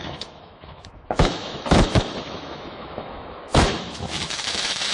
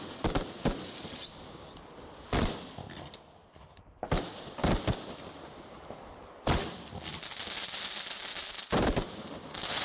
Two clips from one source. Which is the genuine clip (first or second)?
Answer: second